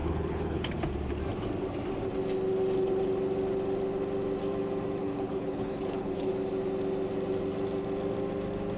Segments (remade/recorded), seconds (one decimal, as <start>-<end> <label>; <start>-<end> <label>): 0.0-0.7 remade; 0.7-5.0 recorded; 5.0-6.3 remade; 6.3-8.8 recorded